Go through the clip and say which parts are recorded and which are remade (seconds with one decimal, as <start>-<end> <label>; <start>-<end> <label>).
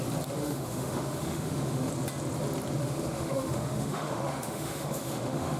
0.0-0.4 recorded; 0.4-1.9 remade; 1.9-2.8 recorded; 2.8-5.6 remade